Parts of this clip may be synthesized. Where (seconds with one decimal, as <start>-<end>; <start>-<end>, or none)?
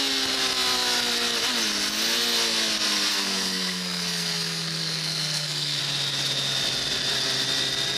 3.1-5.8